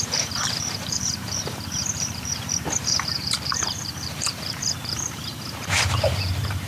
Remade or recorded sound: remade